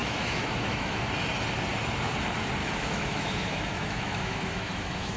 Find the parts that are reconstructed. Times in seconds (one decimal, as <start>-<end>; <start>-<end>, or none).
0.0-1.0; 2.6-5.2